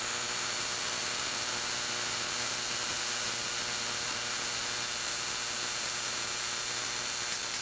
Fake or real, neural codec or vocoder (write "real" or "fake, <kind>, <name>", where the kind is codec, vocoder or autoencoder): real